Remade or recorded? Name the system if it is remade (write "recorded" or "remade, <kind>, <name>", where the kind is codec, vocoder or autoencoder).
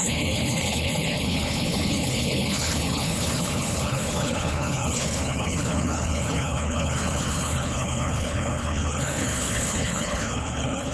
remade, codec, HILCodec